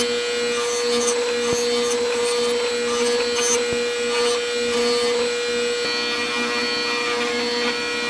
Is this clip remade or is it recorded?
recorded